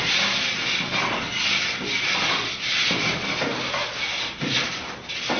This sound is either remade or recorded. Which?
recorded